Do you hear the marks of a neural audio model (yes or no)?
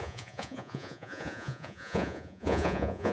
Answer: yes